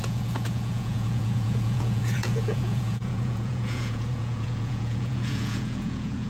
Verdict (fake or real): fake